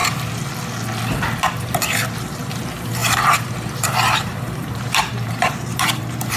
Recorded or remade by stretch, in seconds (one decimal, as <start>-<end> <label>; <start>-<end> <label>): 0.0-1.5 recorded; 1.5-6.4 remade